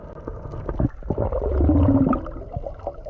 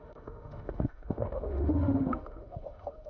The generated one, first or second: second